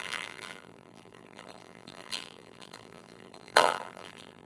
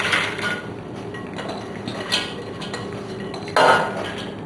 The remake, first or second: first